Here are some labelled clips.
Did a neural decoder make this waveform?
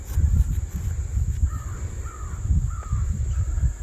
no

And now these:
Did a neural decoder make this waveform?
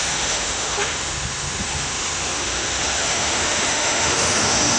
yes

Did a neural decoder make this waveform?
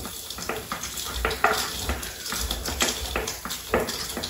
no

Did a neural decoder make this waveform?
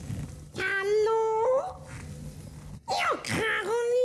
no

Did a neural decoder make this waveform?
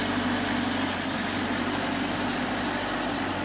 no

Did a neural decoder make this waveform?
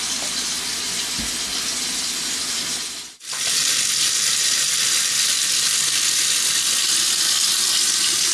no